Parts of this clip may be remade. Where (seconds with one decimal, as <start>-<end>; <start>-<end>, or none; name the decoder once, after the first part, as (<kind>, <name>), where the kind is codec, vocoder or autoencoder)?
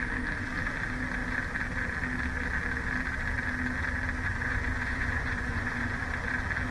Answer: 4.3-6.0 (vocoder, Vocos)